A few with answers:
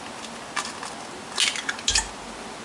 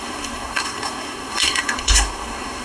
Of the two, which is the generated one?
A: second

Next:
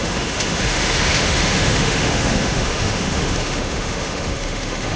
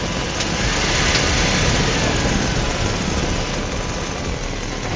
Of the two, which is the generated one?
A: first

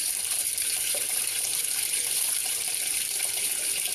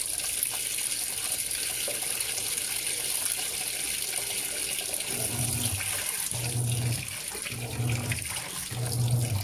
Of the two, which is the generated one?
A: first